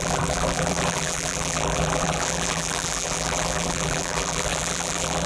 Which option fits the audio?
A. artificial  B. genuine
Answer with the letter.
A